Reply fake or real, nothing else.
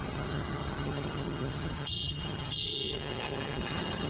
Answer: fake